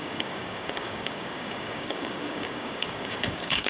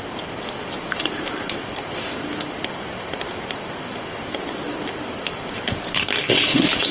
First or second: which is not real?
first